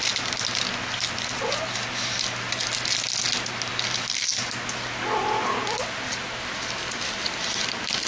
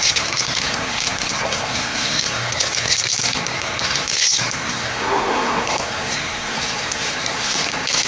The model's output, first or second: second